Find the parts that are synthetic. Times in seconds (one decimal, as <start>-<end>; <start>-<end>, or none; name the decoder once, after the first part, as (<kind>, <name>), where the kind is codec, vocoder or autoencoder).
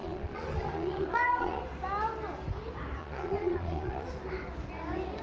0.0-1.6 (vocoder, Vocos); 3.0-4.1